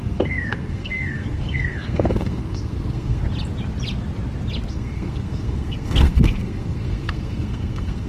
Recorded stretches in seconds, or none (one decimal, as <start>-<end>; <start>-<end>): 3.2-4.7